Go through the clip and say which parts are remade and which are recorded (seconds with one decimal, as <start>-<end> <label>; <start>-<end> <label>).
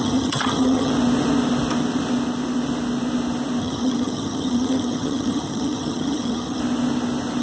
0.0-0.9 remade; 0.9-3.6 recorded; 3.6-6.6 remade; 6.6-7.4 recorded